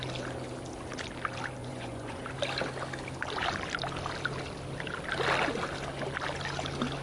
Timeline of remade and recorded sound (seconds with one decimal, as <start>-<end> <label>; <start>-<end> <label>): 0.0-1.6 recorded; 1.6-2.3 remade; 2.3-7.0 recorded